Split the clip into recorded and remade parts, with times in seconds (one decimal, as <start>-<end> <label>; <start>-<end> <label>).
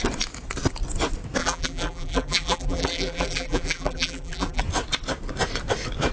0.0-1.4 recorded; 1.4-4.6 remade; 4.6-6.1 recorded